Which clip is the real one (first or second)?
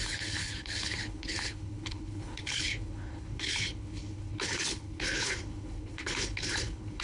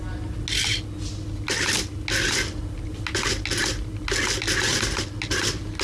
second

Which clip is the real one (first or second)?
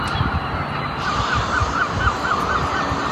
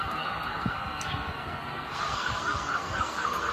first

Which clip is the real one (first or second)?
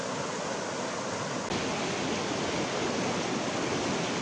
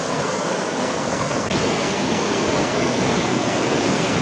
first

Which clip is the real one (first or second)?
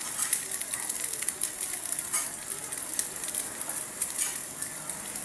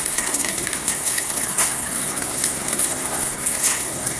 first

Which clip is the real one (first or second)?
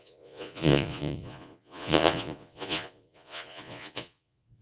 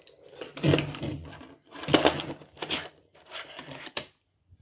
second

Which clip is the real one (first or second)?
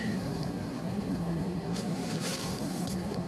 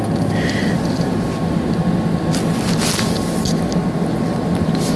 second